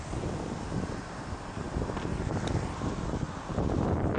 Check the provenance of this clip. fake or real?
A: real